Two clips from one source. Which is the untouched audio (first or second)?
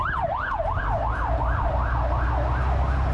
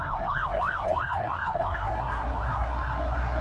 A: first